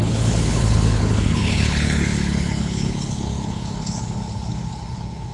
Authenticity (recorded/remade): remade